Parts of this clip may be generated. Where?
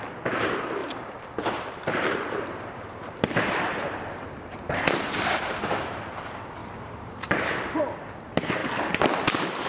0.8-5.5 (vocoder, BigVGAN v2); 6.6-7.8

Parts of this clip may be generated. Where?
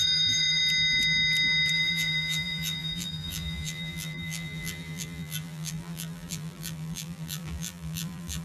0.0-0.6 (vocoder, BigVGAN v2); 1.7-8.4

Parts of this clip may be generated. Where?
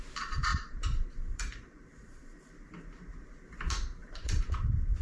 0.0-5.0 (vocoder, BigVGAN v2)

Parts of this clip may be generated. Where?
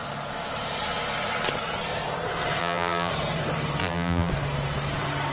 2.6-3.1 (vocoder, BigVGAN v2); 3.8-4.3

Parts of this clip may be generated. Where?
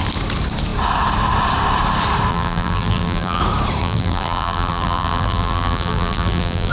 2.3-3.4 (vocoder, BigVGAN v2); 3.8-6.7